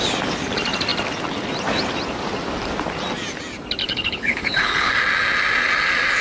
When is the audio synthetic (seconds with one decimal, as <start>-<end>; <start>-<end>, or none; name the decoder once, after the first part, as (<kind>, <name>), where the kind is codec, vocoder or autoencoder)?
3.8-4.9 (codec, HILCodec)